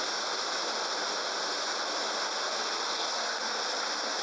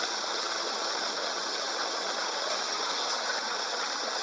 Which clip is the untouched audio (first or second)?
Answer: first